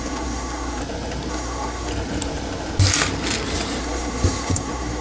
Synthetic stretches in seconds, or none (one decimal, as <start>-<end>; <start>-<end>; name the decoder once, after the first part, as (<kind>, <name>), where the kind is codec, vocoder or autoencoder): 0.0-0.8 (codec, SNAC); 1.3-1.9; 3.8-5.0